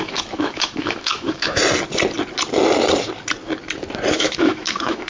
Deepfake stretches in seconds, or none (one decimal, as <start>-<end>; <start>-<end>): 0.0-1.6; 4.1-5.1